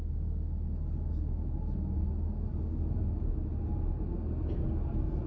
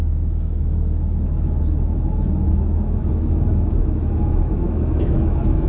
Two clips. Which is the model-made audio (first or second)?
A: second